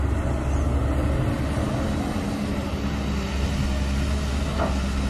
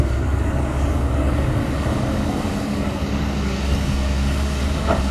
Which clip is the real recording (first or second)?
first